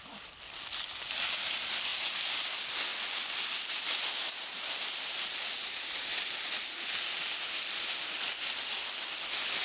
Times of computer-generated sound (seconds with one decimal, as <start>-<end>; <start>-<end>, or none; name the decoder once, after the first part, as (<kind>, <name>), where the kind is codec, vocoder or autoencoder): none